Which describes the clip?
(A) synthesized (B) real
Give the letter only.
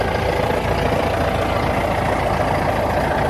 B